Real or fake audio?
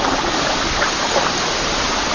real